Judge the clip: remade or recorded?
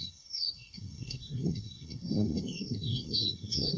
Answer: remade